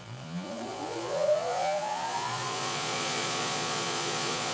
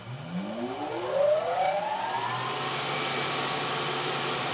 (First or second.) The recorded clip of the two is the second